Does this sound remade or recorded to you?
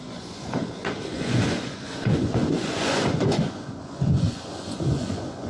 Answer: remade